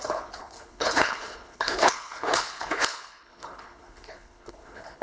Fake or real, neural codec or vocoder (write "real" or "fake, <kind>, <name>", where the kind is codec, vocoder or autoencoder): fake, codec, HILCodec